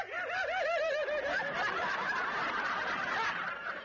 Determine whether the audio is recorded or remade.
remade